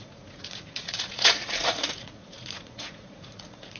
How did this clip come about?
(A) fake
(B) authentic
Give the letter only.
A